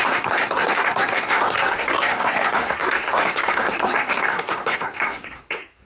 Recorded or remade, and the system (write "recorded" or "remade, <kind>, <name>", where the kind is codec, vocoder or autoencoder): remade, codec, SNAC